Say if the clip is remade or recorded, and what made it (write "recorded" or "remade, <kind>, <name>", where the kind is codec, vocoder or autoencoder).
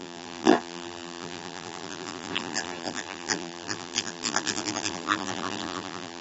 remade, vocoder, BigVGAN v2